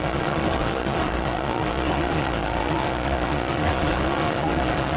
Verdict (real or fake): fake